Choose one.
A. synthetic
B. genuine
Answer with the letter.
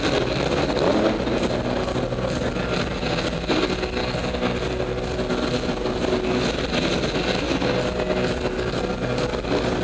B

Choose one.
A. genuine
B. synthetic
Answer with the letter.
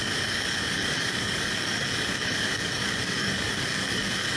B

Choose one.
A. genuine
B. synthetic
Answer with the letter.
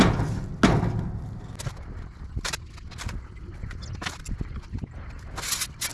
A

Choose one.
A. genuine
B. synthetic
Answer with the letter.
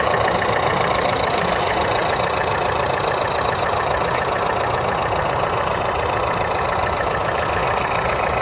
B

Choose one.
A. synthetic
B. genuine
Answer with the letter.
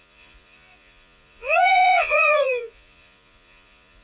A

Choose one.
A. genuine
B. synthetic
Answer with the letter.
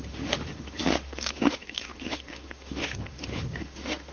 B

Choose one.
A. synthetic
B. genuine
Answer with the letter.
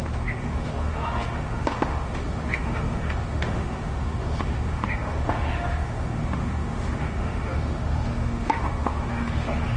A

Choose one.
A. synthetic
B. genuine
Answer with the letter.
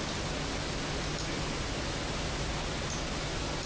B